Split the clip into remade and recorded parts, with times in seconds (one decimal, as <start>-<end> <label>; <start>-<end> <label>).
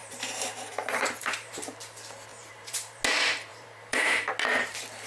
0.0-1.6 remade; 1.6-2.3 recorded; 2.3-3.0 remade; 3.0-3.5 recorded; 3.5-4.3 remade; 4.3-5.1 recorded